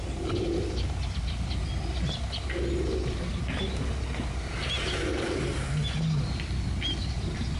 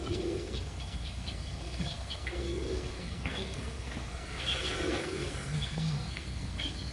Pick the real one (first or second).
first